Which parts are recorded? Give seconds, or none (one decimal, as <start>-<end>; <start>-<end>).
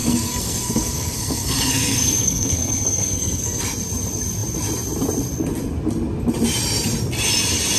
3.6-7.8